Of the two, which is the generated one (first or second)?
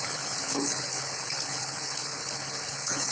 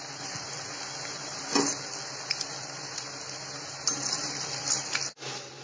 first